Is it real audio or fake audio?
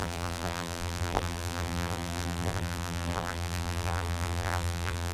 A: fake